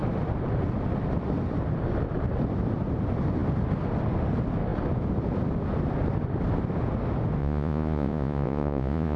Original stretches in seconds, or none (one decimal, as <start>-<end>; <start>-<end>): 0.0-7.4